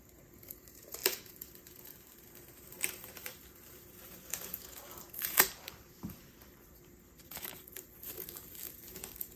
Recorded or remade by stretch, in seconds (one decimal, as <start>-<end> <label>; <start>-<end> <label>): 0.0-9.4 remade